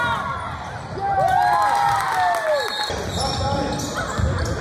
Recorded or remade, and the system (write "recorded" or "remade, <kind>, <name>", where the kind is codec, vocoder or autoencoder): recorded